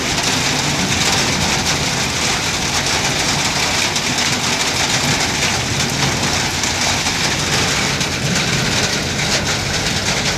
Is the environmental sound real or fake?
real